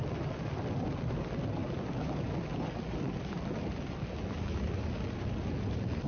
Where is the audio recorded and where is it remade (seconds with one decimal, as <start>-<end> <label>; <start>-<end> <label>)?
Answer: 0.0-6.1 recorded